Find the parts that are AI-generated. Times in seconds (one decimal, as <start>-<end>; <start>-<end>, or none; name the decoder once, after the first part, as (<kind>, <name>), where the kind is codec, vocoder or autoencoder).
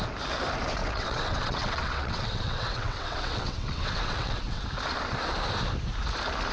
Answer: 0.8-4.7 (vocoder, WaveNeXt)